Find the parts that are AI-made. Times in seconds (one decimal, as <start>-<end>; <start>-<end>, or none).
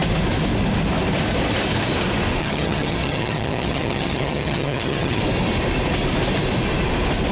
2.4-5.2